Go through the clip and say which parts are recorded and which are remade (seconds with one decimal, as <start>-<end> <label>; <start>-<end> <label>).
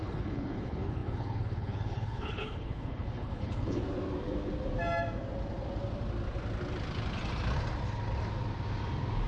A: 0.0-3.8 remade; 3.8-9.3 recorded